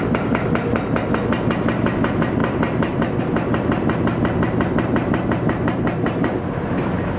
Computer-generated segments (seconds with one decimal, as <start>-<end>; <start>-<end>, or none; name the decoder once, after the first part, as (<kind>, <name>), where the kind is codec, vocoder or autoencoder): none

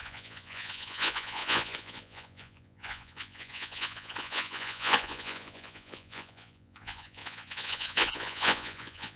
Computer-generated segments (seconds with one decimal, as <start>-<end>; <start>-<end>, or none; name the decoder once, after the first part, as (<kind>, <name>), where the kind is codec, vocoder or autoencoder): 0.0-9.2 (vocoder, Vocos)